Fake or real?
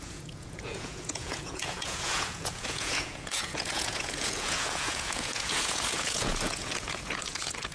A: fake